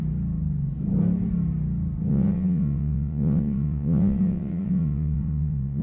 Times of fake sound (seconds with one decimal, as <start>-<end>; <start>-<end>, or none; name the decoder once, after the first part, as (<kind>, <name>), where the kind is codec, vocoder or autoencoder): 2.1-5.8 (vocoder, WaveNeXt)

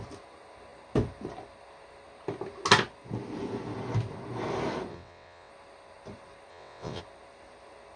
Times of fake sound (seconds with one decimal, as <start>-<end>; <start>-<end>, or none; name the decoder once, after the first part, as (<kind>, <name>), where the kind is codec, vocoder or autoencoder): 4.9-5.5 (vocoder, WaveNeXt); 6.5-7.0

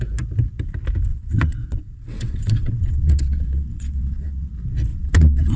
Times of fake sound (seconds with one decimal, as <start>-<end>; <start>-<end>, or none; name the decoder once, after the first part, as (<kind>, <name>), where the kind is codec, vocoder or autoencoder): 1.1-4.5 (vocoder, WaveNeXt); 4.9-5.6

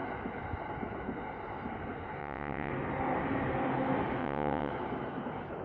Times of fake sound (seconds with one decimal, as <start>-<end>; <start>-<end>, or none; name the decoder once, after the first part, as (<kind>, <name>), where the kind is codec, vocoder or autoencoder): 2.2-2.7 (vocoder, WaveNeXt); 4.2-4.7

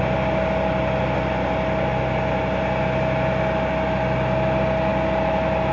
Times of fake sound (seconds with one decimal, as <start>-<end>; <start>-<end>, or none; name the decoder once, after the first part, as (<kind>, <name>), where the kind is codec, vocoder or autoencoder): none

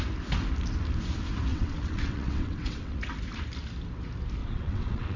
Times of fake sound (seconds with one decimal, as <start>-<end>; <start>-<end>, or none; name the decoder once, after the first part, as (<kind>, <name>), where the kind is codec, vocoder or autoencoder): 1.5-3.0 (vocoder, WaveNeXt); 4.4-5.2